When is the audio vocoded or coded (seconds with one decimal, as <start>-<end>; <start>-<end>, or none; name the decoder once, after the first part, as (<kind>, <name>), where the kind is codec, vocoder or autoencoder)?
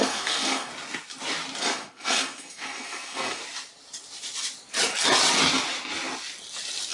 0.0-0.7 (codec, SNAC); 1.6-3.4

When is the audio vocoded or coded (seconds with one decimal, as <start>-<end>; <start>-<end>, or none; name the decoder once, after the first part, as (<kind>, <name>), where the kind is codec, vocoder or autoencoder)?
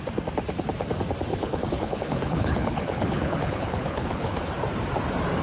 1.3-4.5 (codec, HILCodec)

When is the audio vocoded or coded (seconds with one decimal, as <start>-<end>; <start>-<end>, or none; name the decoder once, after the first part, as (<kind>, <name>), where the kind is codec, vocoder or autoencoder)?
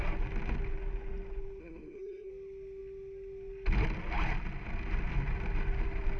1.6-2.3 (codec, SNAC)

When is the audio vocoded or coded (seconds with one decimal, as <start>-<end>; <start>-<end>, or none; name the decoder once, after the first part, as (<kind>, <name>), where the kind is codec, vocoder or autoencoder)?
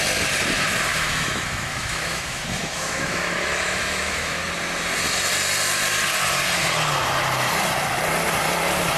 0.9-4.4 (autoencoder, DAC-VAE)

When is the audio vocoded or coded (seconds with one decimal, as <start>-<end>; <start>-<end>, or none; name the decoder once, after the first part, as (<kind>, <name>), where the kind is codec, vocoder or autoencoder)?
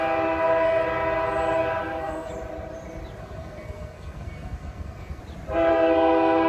1.8-2.3 (codec, SNAC); 3.2-5.2; 5.7-6.5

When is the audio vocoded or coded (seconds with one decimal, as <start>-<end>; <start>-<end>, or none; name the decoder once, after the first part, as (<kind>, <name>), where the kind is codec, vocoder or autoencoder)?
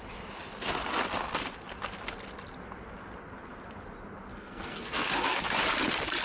4.3-5.4 (codec, SNAC)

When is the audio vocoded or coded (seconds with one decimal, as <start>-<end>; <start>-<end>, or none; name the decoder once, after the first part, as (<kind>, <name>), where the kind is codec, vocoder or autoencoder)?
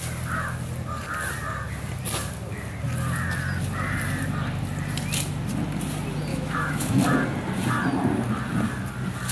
6.3-7.0 (autoencoder, DAC-VAE)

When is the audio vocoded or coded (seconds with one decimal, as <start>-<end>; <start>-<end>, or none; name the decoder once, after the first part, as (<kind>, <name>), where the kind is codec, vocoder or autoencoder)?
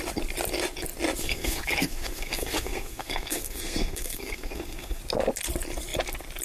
1.2-5.0 (codec, SNAC)